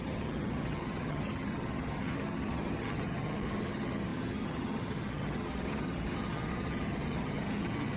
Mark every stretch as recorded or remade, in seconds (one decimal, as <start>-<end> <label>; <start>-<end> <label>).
0.0-8.0 remade